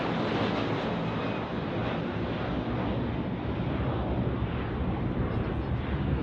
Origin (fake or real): real